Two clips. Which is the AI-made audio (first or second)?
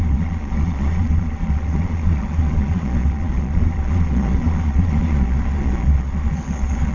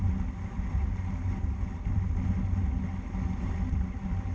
first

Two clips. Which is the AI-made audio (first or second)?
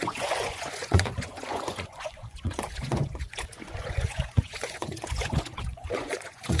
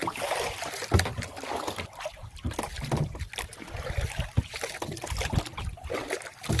first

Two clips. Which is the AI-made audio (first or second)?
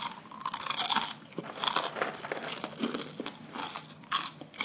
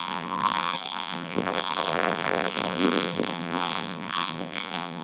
second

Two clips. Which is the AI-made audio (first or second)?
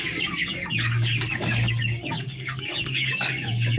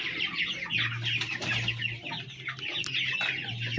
first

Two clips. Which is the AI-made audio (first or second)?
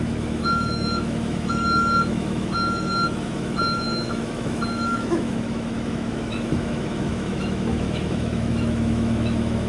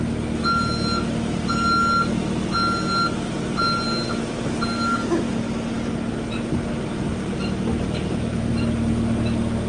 first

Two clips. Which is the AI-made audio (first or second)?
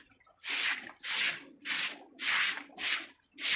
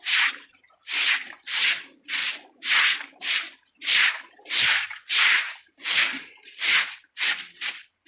second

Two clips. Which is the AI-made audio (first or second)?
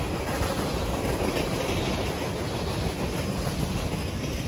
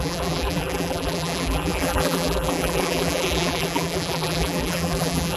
second